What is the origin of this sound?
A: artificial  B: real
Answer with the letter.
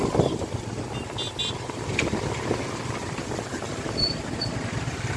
B